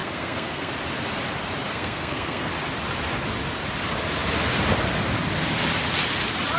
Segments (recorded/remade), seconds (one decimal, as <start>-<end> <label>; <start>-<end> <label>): 0.0-0.7 remade; 0.7-1.7 recorded; 1.7-2.5 remade; 2.5-6.6 recorded